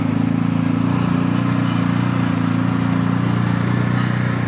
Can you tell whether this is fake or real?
real